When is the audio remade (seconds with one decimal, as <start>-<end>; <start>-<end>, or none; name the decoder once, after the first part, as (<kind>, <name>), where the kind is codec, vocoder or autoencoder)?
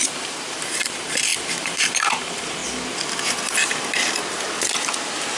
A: 0.0-2.6 (vocoder, BigVGAN v2)